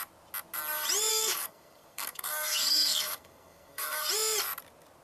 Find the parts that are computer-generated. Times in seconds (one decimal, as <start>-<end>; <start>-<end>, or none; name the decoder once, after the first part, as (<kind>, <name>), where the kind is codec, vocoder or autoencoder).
1.1-4.1 (codec, SNAC)